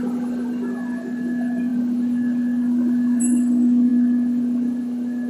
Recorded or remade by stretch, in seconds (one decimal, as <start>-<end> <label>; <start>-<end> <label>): 0.0-5.3 remade